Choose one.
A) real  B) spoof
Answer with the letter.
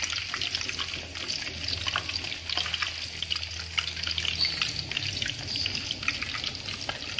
A